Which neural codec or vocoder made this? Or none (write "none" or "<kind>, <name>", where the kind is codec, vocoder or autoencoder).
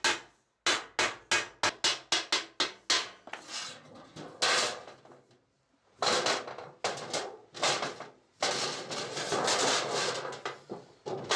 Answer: none